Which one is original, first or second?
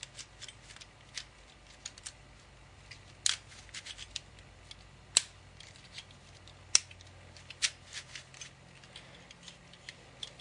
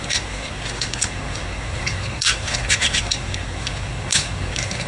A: first